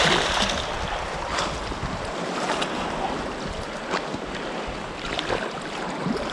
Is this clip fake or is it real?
real